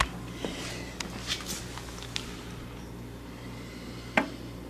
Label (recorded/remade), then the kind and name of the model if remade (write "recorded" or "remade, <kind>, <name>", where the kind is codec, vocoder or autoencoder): recorded